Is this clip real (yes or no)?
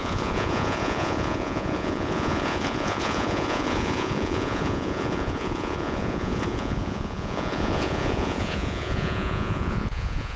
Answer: no